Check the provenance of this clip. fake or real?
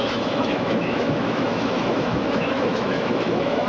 fake